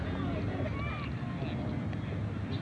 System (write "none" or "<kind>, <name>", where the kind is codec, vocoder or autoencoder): none